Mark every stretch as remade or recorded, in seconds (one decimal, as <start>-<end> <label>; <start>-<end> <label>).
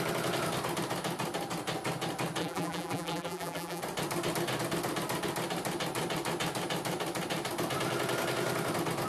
0.0-2.4 recorded; 2.4-3.8 remade; 3.8-9.1 recorded